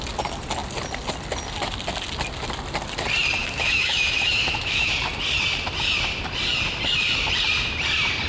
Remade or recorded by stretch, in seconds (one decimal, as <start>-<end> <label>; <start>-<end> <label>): 0.0-3.4 recorded; 3.4-4.9 remade; 4.9-8.3 recorded